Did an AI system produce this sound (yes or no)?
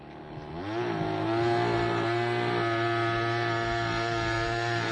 no